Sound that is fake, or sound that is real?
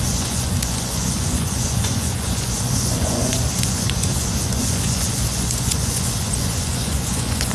fake